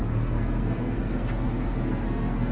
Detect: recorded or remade remade